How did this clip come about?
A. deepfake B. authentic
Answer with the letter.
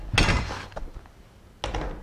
B